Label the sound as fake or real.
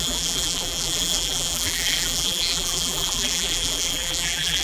fake